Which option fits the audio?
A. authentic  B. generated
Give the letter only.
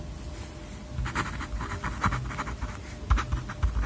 A